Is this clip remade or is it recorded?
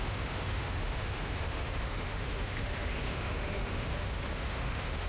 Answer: remade